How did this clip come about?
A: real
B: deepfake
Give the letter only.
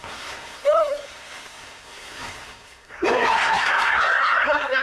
B